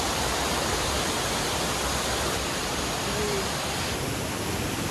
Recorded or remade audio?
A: remade